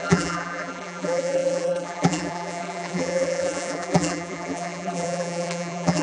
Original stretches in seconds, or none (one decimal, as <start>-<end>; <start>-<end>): none